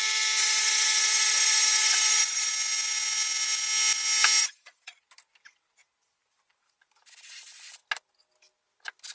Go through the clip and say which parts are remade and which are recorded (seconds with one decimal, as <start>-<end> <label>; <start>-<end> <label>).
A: 0.0-0.4 recorded; 0.4-2.5 remade; 2.5-4.4 recorded; 4.4-5.0 remade; 5.0-9.1 recorded